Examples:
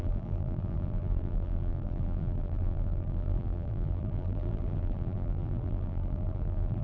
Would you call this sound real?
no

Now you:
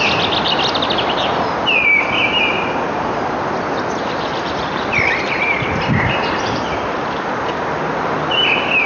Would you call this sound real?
no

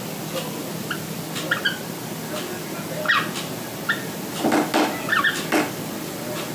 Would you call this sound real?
yes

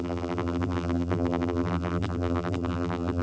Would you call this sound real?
no